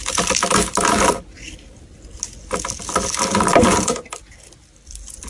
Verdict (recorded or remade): recorded